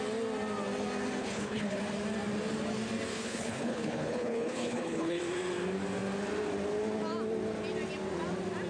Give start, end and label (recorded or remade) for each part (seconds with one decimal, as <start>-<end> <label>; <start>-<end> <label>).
0.0-1.2 recorded; 1.2-1.8 remade; 1.8-3.1 recorded; 3.1-5.2 remade; 5.2-8.7 recorded